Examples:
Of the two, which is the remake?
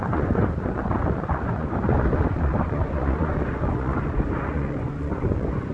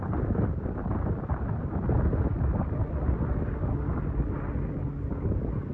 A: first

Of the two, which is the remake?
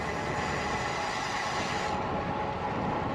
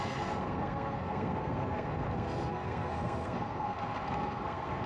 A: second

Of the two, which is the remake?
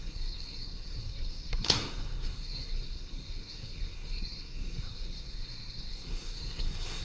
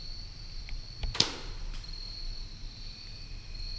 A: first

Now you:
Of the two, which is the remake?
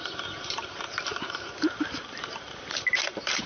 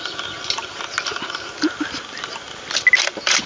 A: first